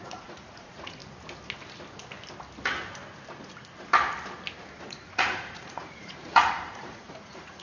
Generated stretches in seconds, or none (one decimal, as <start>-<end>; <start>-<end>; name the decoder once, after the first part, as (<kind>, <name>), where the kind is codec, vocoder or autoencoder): 0.0-1.0 (vocoder, Vocos); 4.8-7.6